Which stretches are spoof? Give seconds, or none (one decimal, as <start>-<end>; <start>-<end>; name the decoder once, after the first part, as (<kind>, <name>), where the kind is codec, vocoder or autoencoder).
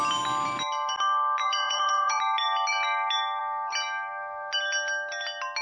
1.4-2.2 (vocoder, Vocos)